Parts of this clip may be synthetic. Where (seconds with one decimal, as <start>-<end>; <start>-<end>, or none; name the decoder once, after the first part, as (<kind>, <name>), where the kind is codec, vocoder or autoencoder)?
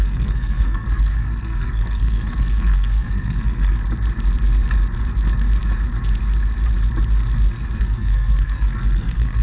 0.0-3.8 (codec, SNAC); 7.8-9.4